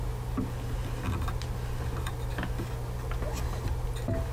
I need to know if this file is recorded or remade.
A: recorded